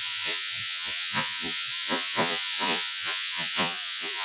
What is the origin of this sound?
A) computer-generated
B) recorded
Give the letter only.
A